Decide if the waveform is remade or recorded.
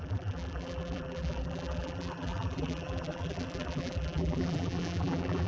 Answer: remade